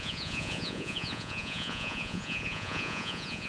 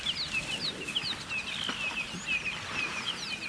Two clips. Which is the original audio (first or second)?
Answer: second